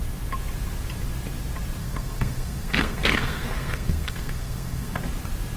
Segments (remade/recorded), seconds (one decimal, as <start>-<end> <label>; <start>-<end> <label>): 0.0-1.8 recorded; 1.8-5.0 remade; 5.0-5.6 recorded